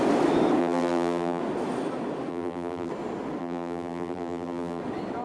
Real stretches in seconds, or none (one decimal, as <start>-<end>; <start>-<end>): 0.0-0.6; 1.4-2.3; 2.9-3.4; 4.8-5.2